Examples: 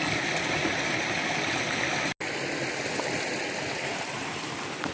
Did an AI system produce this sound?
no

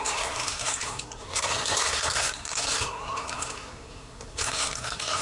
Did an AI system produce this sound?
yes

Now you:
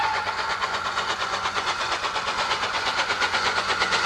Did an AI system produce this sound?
yes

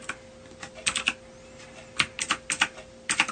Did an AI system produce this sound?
no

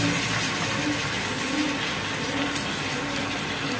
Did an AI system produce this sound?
no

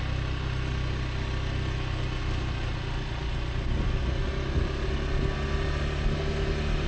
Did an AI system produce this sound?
no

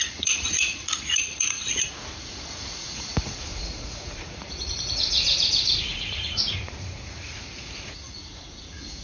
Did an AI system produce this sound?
yes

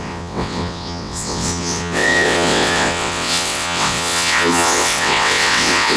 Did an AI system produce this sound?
yes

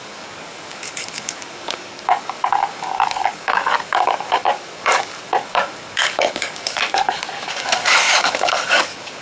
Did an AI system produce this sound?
yes